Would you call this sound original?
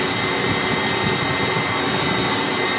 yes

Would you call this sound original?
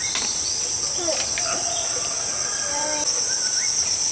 no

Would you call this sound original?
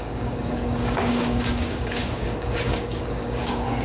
no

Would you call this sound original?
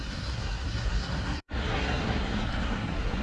no